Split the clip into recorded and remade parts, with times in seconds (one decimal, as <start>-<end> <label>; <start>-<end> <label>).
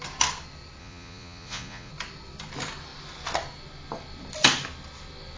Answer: 0.0-0.8 recorded; 0.8-1.9 remade; 1.9-5.4 recorded